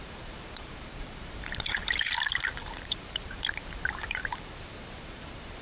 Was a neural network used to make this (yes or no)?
yes